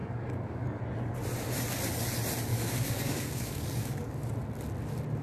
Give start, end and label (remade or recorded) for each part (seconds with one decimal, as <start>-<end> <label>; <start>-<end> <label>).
0.0-0.8 remade; 0.8-2.5 recorded; 2.5-4.3 remade; 4.3-5.2 recorded